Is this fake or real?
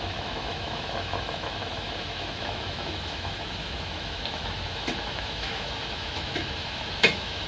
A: fake